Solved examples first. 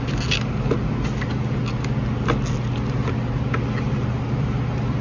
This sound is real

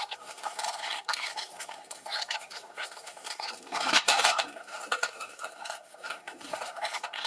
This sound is fake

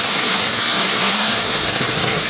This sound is fake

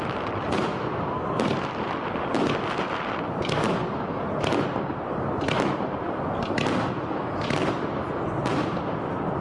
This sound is real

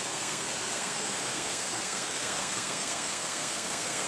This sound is fake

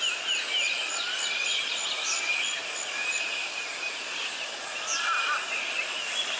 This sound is real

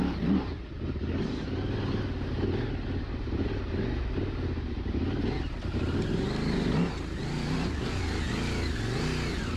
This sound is real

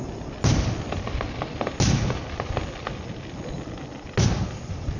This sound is real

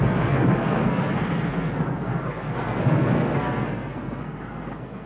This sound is fake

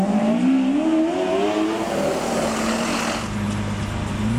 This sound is real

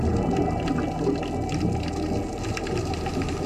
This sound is real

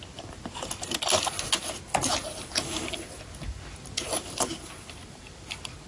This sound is real